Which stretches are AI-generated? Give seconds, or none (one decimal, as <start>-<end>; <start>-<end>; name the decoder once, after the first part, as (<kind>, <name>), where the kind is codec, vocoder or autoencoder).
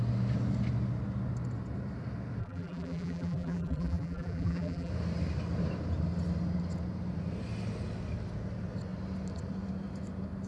2.4-4.9 (vocoder, BigVGAN v2)